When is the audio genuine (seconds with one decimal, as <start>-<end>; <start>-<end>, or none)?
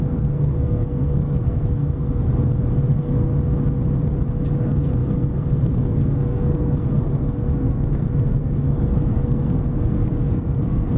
2.3-2.9; 3.3-4.6